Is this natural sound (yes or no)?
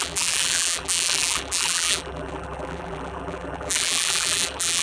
no